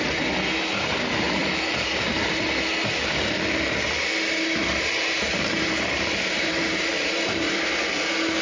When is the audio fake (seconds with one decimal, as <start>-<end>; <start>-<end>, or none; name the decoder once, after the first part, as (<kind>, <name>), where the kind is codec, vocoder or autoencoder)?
1.4-2.3 (vocoder, BigVGAN v2); 4.6-7.6